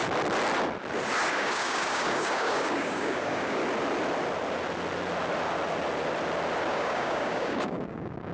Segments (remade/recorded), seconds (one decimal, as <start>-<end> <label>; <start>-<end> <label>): 0.0-1.3 recorded; 1.3-3.6 remade; 3.6-6.7 recorded; 6.7-8.3 remade